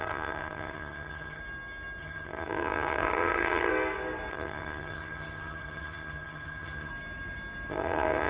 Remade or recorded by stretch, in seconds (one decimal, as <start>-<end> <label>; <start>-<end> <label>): 0.0-1.4 remade; 1.4-2.0 recorded; 2.0-3.7 remade; 3.7-4.3 recorded; 4.3-6.9 remade; 6.9-7.7 recorded; 7.7-8.3 remade